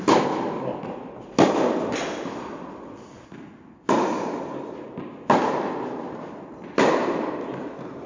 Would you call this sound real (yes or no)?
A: yes